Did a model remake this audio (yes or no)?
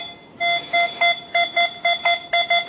no